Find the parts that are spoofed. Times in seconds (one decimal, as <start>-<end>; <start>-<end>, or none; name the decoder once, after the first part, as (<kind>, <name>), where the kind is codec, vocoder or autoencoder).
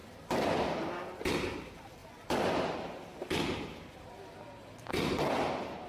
none